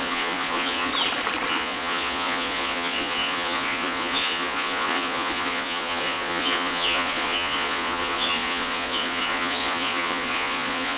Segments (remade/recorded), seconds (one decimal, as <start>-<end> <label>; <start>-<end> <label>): 0.0-0.9 remade; 0.9-1.5 recorded; 1.5-11.0 remade